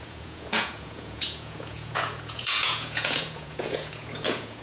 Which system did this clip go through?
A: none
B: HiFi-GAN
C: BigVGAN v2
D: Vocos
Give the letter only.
D